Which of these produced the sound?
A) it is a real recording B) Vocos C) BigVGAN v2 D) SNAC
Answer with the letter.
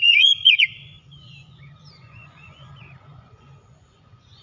B